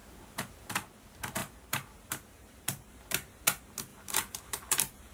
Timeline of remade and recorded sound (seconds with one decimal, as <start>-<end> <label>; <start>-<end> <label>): 0.0-0.7 remade; 0.7-1.4 recorded; 1.4-3.0 remade; 3.0-3.9 recorded; 3.9-5.1 remade